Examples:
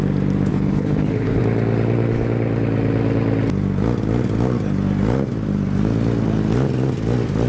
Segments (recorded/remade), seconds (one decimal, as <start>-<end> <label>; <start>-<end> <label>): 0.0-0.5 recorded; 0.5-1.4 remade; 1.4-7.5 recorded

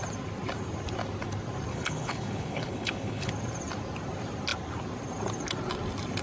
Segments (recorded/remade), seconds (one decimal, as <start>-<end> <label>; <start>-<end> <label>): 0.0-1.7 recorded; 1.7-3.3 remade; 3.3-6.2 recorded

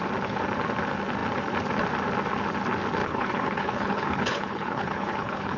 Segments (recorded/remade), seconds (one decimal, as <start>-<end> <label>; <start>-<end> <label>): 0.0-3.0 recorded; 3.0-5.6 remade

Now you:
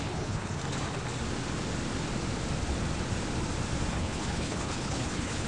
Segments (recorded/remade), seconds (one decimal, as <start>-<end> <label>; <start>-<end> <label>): 0.0-0.6 remade; 0.6-3.9 recorded; 3.9-5.5 remade

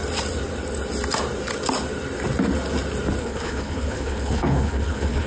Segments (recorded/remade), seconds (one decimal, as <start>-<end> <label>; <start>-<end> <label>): 0.0-3.2 recorded; 3.2-5.3 remade

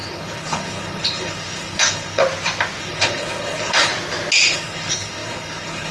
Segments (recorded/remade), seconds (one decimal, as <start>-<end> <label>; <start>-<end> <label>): 0.0-2.2 remade; 2.2-2.8 recorded; 2.8-3.9 remade; 3.9-4.5 recorded; 4.5-5.9 remade

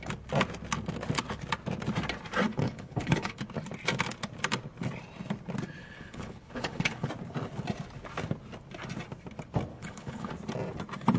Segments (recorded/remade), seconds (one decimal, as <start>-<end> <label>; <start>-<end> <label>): 0.0-2.5 recorded; 2.5-3.4 remade; 3.4-5.8 recorded; 5.8-7.1 remade; 7.1-9.7 recorded; 9.7-10.3 remade; 10.3-11.2 recorded

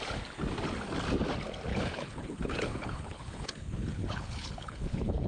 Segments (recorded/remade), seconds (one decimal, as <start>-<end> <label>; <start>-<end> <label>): 0.0-1.7 recorded; 1.7-5.3 remade